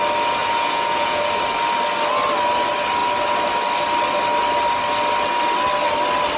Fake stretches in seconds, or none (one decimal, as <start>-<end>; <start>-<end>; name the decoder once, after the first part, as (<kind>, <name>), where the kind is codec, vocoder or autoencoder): 0.4-1.2 (vocoder, Vocos)